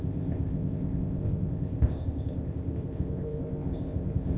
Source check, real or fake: fake